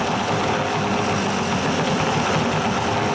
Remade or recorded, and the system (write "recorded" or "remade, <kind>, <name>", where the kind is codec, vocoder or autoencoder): recorded